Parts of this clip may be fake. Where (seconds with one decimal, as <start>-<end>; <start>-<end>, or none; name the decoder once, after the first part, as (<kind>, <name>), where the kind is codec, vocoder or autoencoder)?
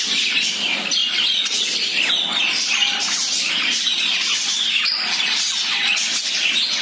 none